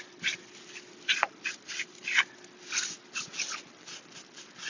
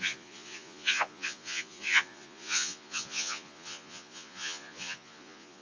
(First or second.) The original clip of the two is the first